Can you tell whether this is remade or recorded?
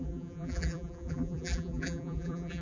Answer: remade